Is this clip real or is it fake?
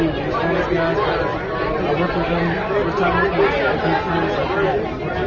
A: real